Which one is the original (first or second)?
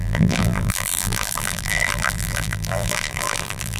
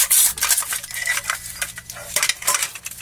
second